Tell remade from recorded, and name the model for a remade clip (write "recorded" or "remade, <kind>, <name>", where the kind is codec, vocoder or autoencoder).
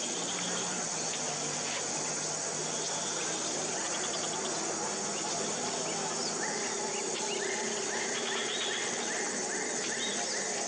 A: recorded